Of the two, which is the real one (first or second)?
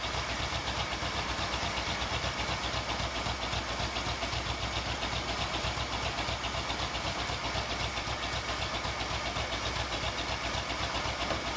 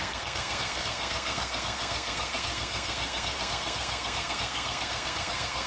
first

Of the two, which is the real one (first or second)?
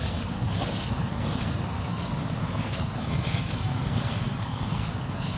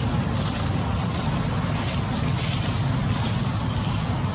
second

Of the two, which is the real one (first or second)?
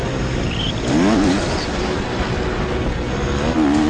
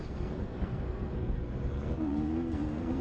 first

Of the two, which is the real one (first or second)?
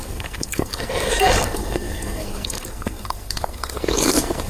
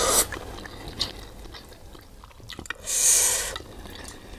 second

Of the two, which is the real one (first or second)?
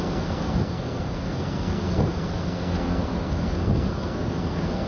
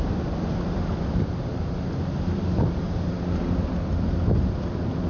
second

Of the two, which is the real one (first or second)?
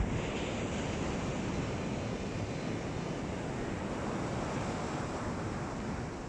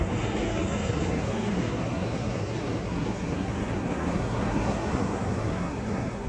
first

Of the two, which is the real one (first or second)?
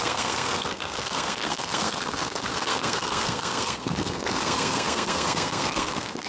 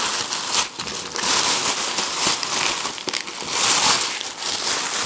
second